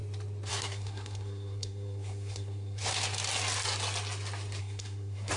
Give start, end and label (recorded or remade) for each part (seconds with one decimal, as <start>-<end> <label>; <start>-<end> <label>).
0.0-0.5 recorded; 0.5-2.9 remade; 2.9-4.6 recorded; 4.6-5.4 remade